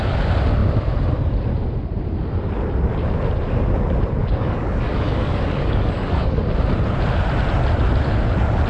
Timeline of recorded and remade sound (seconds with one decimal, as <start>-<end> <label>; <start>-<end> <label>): 0.0-4.2 recorded; 4.2-6.4 remade; 6.4-8.7 recorded